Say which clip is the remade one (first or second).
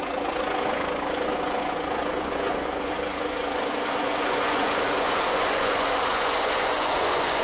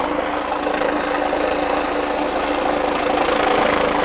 first